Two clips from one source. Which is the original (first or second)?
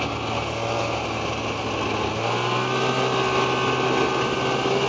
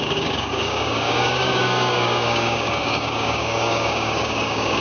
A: first